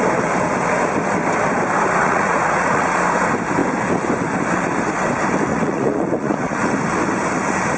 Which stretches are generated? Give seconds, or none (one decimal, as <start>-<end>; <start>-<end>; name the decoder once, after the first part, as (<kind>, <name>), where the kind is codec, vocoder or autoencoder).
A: 2.0-3.0 (vocoder, Vocos); 5.5-6.7